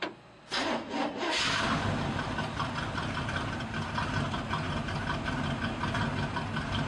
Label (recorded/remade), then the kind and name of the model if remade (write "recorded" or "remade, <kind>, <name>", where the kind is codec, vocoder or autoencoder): recorded